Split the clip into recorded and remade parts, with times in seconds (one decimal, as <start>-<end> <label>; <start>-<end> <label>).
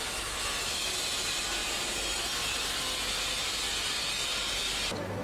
0.0-0.9 remade; 0.9-5.2 recorded